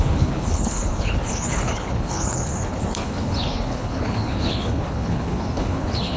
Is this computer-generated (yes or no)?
yes